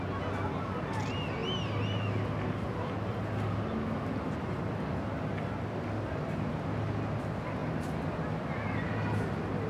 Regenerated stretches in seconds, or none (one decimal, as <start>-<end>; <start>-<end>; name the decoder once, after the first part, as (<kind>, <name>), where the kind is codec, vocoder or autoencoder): none

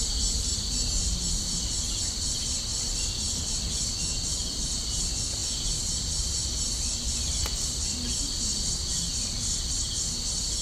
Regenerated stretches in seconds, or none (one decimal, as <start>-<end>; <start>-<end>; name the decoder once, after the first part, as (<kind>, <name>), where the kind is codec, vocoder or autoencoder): none

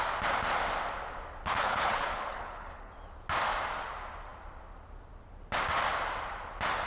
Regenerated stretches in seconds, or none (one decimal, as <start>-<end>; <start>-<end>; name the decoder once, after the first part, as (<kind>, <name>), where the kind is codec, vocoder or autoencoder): 1.4-2.9 (codec, HILCodec)

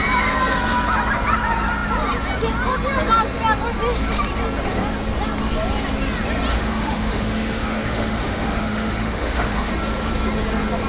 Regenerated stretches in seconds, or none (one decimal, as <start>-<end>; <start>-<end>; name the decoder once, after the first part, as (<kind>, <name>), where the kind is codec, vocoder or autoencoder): 6.5-9.7 (autoencoder, DAC-VAE)

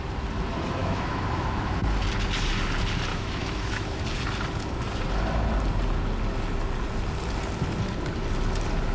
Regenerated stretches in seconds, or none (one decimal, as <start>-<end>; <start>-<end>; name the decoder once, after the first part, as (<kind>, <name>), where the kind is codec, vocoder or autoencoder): 0.8-1.8 (autoencoder, DAC-VAE); 3.1-4.0

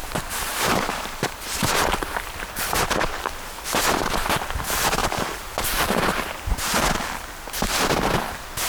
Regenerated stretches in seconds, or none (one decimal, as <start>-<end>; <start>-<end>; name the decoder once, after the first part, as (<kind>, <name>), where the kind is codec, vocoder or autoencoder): 0.0-3.2 (vocoder, BigVGAN v2); 5.0-6.8

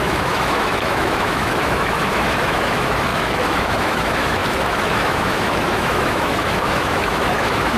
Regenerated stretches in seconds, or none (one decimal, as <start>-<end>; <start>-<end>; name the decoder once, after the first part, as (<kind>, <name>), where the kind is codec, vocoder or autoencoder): 0.0-7.8 (autoencoder, DAC-VAE)